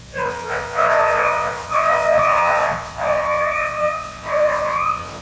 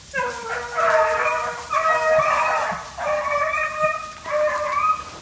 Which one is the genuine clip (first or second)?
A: second